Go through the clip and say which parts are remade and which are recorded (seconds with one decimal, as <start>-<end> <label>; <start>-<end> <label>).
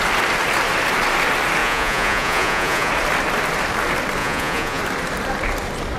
0.0-1.6 recorded; 1.6-2.9 remade; 2.9-4.2 recorded; 4.2-4.8 remade; 4.8-6.0 recorded